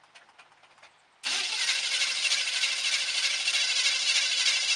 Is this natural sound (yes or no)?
yes